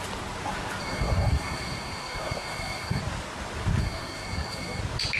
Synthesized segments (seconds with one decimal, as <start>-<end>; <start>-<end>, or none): 0.8-3.0; 3.8-4.8